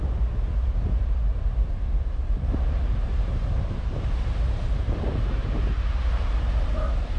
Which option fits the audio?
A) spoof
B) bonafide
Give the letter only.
A